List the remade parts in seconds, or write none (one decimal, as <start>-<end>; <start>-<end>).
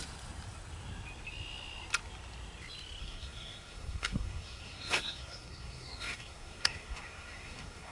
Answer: 3.0-7.9